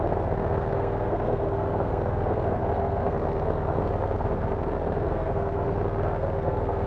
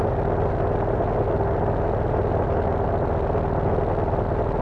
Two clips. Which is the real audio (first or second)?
second